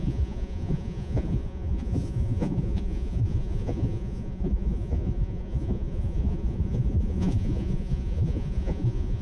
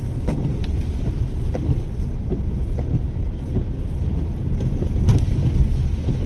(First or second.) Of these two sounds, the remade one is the first